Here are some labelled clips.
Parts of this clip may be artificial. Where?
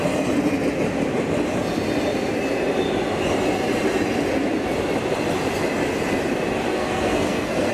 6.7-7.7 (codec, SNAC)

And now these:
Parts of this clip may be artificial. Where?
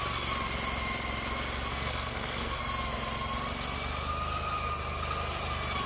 1.7-2.6 (codec, SNAC)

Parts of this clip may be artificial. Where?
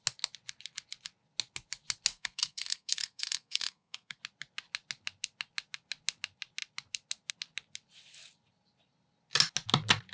2.1-4.2 (codec, SNAC)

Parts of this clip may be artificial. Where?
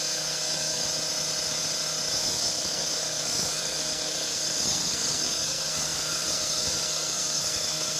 0.0-0.8 (codec, SNAC); 2.2-8.0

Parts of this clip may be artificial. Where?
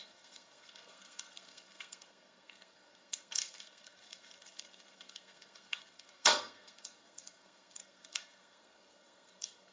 0.0-9.7 (codec, SNAC)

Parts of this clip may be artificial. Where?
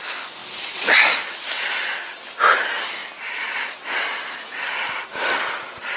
none